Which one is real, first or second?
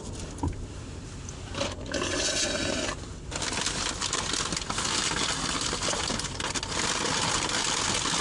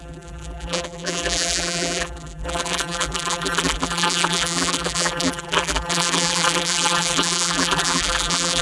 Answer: first